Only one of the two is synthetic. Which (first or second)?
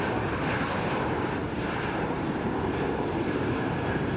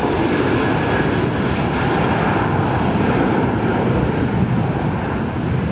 first